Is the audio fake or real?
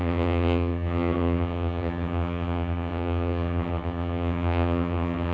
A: fake